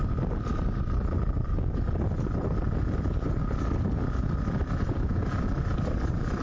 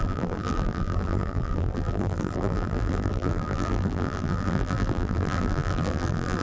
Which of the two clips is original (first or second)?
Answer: first